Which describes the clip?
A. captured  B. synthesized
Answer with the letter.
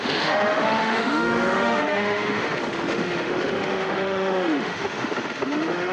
B